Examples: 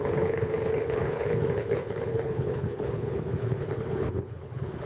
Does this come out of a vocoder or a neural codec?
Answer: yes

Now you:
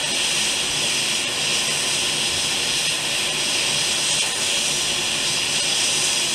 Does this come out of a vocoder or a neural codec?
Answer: no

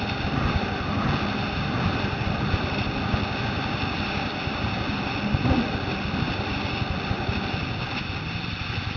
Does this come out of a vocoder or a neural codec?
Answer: no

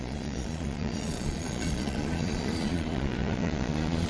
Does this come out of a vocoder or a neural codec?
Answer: yes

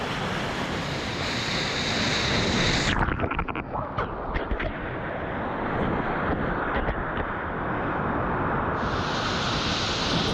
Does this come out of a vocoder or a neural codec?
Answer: no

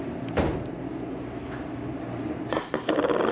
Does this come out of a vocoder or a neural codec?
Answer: no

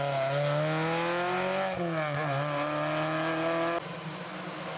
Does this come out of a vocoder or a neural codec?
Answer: no